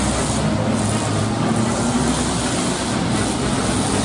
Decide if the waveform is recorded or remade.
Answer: recorded